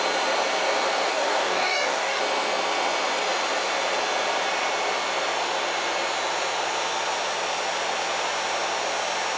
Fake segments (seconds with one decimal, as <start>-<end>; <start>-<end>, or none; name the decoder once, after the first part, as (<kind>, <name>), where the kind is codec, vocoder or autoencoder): 1.1-2.2 (codec, DAC)